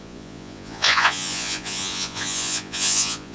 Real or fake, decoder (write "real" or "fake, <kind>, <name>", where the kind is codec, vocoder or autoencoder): fake, vocoder, Vocos